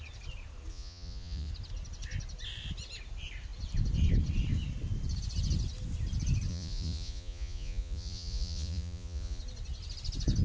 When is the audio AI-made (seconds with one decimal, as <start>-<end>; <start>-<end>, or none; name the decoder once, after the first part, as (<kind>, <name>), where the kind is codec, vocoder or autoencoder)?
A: 0.7-1.5 (vocoder, Vocos); 6.5-9.4